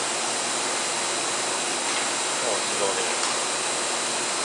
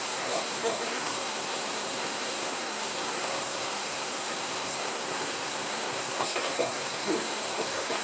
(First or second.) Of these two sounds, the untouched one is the first